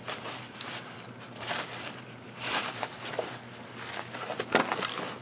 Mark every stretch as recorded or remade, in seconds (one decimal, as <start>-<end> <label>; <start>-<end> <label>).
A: 0.0-3.1 remade; 3.1-5.2 recorded